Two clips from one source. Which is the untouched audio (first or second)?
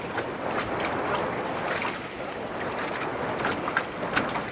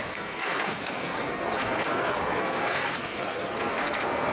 first